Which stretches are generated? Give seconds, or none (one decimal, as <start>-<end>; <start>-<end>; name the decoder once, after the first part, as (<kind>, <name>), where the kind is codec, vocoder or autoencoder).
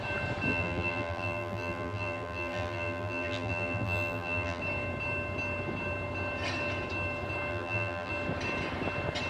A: 0.5-4.6 (vocoder, BigVGAN v2); 7.5-8.1